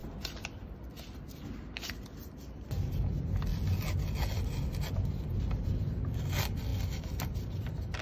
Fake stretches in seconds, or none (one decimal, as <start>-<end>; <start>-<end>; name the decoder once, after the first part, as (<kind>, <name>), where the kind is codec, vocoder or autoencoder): none